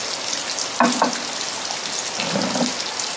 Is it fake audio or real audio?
real